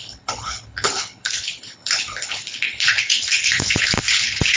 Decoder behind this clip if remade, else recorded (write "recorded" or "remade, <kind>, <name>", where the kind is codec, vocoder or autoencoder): remade, codec, HILCodec